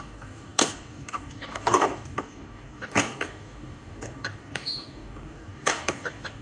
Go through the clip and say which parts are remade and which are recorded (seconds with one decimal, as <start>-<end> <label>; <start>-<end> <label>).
0.0-6.4 remade